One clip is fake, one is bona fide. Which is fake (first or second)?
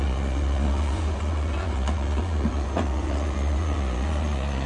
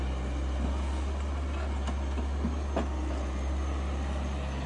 first